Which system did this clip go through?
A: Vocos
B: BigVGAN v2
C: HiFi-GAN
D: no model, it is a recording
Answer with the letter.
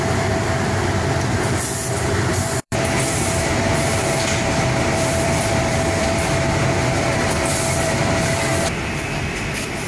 B